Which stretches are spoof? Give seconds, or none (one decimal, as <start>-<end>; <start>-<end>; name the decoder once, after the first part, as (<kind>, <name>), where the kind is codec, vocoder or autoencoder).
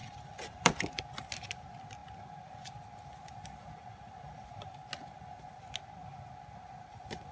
0.0-1.0 (vocoder, BigVGAN v2)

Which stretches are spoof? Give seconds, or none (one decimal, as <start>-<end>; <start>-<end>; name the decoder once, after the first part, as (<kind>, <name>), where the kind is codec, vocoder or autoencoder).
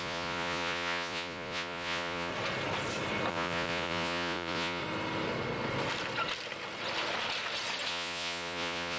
0.0-2.3 (vocoder, Vocos); 3.3-4.8; 7.9-9.0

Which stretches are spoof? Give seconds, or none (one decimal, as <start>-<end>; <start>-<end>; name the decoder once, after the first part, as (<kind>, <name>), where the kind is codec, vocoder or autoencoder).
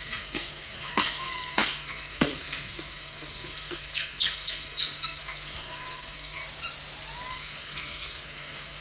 0.0-6.4 (codec, SNAC); 7.3-8.8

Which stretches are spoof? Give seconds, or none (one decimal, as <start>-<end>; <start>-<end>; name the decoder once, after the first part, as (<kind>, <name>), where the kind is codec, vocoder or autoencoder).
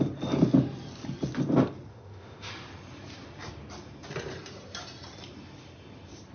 1.9-2.5 (autoencoder, DAC-VAE)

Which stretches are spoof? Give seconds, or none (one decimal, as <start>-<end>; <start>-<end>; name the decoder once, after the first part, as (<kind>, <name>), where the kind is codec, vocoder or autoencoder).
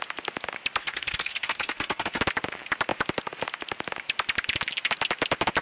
0.8-2.2 (codec, SNAC)